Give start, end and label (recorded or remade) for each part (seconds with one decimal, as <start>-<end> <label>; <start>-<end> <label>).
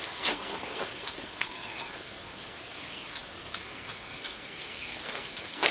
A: 0.0-5.7 remade